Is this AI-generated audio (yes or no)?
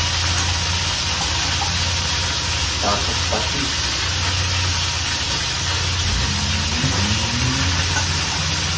no